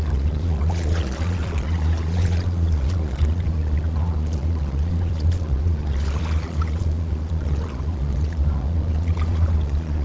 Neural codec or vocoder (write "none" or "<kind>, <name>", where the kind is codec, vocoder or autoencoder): vocoder, Vocos